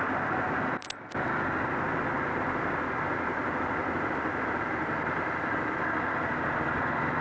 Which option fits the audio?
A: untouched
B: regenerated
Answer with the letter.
A